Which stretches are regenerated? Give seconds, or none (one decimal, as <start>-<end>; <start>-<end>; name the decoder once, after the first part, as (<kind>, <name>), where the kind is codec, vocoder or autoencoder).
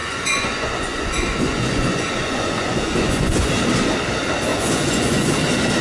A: 0.0-3.5 (vocoder, Vocos); 4.5-5.3